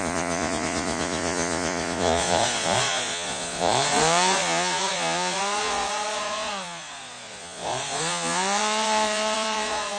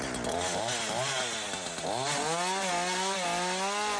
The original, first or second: second